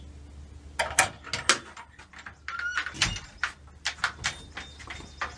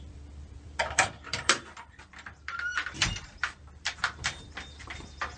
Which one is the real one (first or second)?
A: first